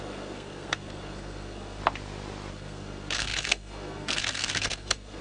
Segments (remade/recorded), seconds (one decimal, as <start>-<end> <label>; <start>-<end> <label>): 0.0-1.8 remade; 1.8-2.5 recorded; 2.5-5.2 remade